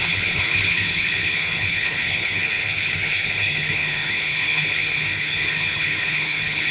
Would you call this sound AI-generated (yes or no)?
yes